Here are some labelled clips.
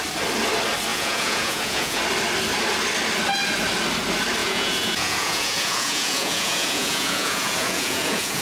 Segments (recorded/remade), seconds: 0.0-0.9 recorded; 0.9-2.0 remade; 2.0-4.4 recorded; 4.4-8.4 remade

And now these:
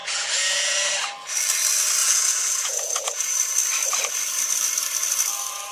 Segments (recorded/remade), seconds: 0.0-0.9 remade; 0.9-2.0 recorded; 2.0-3.4 remade; 3.4-5.7 recorded